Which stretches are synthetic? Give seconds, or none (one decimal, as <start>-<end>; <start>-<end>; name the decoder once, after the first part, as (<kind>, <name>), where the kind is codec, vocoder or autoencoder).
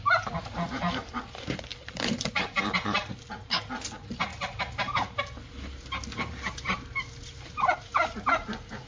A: 0.0-4.3 (vocoder, BigVGAN v2); 6.2-8.9